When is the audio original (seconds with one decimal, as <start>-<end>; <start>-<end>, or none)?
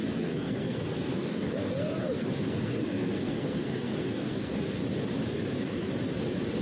4.8-5.3; 5.9-6.6